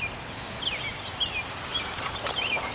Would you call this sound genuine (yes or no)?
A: yes